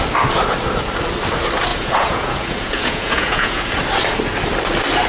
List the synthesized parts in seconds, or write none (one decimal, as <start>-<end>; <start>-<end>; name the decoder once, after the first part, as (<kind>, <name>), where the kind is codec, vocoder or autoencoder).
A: 1.7-3.7 (vocoder, Vocos)